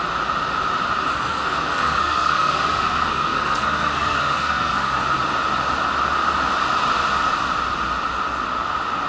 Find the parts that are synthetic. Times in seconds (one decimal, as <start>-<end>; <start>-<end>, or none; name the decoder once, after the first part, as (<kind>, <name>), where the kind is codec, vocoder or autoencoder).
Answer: 1.1-5.0 (codec, SNAC)